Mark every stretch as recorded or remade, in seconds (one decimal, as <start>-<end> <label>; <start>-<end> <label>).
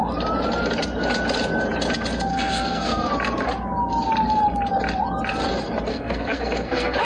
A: 0.0-2.3 recorded; 2.3-3.1 remade; 3.1-5.9 recorded; 5.9-7.0 remade